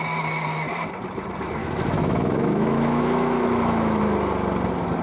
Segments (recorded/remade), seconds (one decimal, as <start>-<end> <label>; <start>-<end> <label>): 0.0-1.6 recorded; 1.6-4.0 remade; 4.0-5.0 recorded